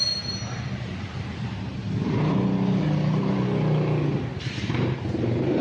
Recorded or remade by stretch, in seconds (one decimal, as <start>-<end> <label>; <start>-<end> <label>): 0.0-1.8 remade; 1.8-4.4 recorded; 4.4-5.6 remade